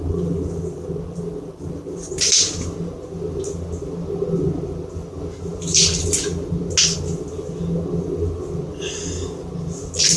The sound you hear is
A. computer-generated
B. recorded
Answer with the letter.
B